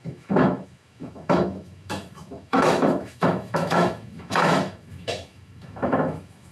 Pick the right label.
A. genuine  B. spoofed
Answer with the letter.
B